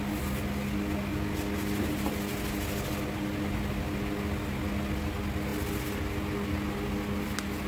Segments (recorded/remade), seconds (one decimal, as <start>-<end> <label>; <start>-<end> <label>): 0.0-7.7 recorded